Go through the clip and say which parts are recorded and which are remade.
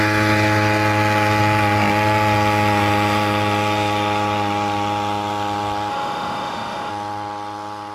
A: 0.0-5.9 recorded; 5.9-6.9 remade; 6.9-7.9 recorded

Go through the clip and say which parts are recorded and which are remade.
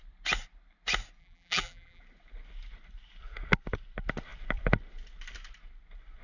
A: 0.0-1.2 recorded; 1.2-2.0 remade; 2.0-6.2 recorded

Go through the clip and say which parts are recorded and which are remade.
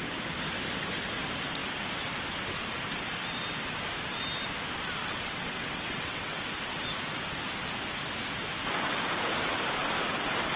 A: 0.0-5.0 recorded; 5.0-6.4 remade; 6.4-10.6 recorded